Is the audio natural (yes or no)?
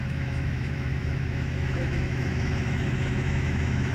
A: no